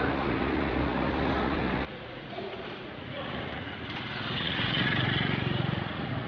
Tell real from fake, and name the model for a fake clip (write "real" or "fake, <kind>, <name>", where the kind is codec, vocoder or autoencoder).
fake, vocoder, Vocos